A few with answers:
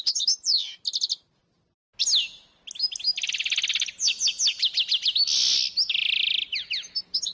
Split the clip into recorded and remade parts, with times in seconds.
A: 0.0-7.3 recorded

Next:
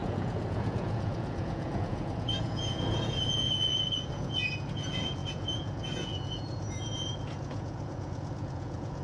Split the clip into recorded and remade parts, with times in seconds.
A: 0.0-9.0 remade